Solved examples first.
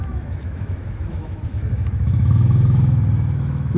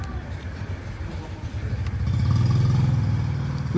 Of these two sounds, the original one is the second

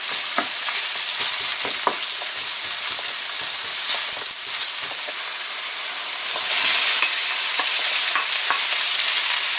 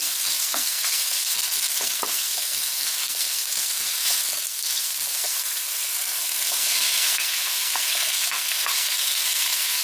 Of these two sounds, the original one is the first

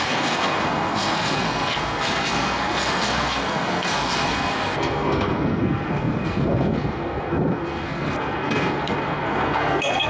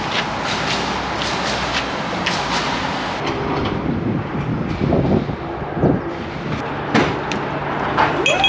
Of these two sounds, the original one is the second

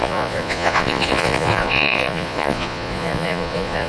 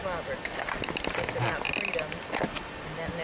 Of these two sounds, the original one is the second